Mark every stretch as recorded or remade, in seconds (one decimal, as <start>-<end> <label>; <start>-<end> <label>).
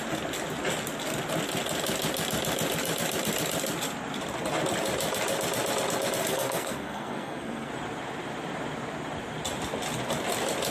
0.0-6.2 recorded; 6.2-7.7 remade; 7.7-10.7 recorded